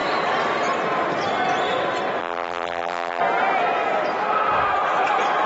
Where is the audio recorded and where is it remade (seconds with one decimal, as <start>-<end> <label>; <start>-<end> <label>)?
0.0-2.2 recorded; 2.2-3.2 remade; 3.2-5.5 recorded